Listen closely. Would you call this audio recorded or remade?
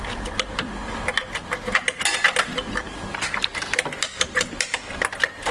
recorded